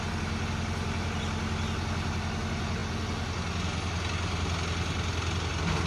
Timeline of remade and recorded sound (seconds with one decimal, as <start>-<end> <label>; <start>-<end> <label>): 0.0-5.9 recorded